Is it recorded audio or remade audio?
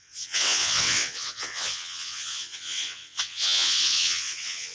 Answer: remade